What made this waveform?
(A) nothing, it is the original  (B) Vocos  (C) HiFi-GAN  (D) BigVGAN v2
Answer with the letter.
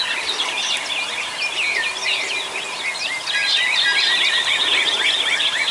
A